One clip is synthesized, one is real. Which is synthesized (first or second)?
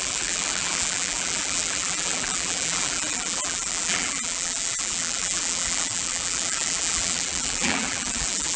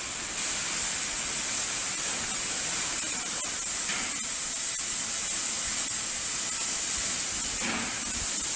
first